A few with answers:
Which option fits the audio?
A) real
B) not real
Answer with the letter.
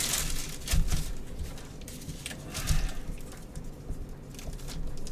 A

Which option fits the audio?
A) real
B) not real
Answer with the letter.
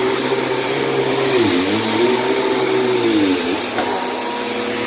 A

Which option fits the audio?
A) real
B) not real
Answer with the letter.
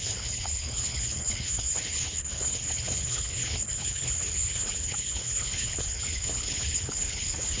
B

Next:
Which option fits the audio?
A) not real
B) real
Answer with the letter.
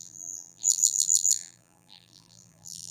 A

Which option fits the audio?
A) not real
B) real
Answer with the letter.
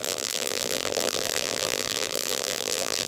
A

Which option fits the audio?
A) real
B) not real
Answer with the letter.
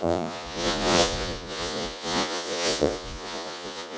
B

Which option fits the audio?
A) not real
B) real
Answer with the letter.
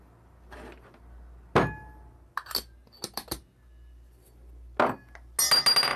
B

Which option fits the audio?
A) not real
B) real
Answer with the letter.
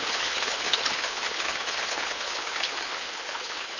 A